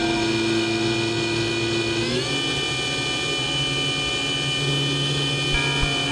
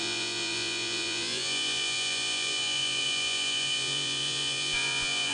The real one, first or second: first